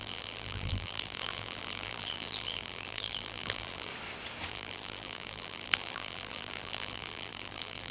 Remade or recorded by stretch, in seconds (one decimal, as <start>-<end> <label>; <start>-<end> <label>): 0.0-3.9 remade; 3.9-4.5 recorded; 4.5-7.9 remade